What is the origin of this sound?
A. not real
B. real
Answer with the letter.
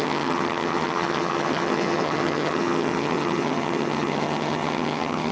A